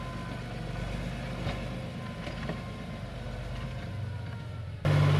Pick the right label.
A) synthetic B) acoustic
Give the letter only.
B